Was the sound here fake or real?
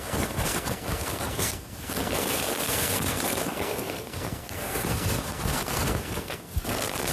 fake